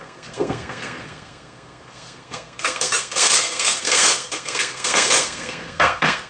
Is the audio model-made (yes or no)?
yes